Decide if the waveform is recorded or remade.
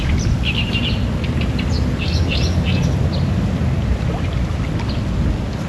recorded